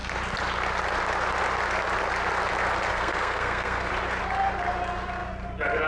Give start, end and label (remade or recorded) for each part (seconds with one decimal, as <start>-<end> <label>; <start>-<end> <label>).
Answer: 0.0-2.9 recorded; 2.9-3.9 remade; 3.9-5.9 recorded